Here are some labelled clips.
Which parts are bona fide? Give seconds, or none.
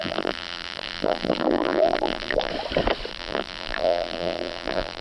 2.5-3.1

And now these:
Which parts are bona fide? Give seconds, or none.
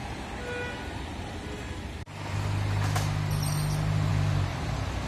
0.0-5.1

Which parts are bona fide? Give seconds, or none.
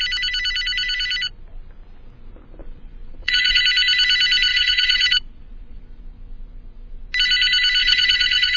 0.0-2.6; 3.6-4.5; 6.0-7.8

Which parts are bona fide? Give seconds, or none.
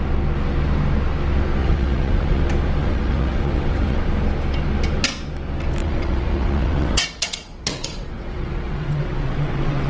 0.0-1.6; 2.4-2.8; 4.0-5.8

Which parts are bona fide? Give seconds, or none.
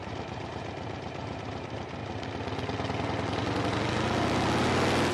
2.0-5.1